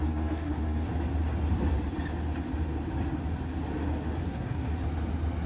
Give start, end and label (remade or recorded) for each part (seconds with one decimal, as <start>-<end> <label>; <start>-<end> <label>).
0.0-0.9 remade; 0.9-4.2 recorded; 4.2-4.7 remade; 4.7-5.5 recorded